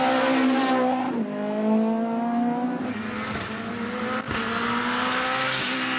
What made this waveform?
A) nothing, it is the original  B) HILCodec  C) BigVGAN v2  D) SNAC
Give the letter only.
A